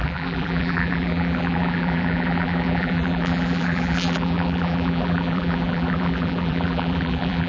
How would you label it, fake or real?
fake